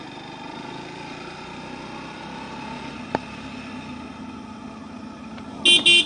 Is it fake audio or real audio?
real